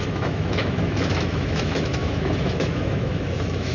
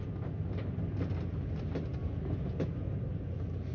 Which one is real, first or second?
second